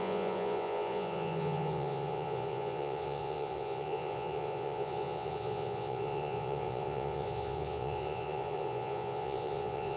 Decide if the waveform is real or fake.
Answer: fake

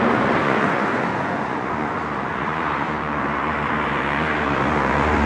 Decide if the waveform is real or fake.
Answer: fake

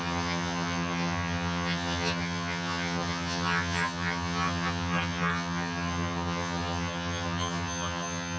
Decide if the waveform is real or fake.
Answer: fake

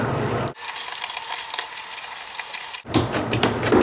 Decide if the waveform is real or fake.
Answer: real